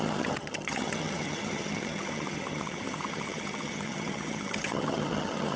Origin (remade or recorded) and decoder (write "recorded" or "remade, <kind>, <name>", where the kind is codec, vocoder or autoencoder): remade, vocoder, HiFi-GAN